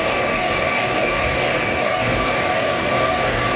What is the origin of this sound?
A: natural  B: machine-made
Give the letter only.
B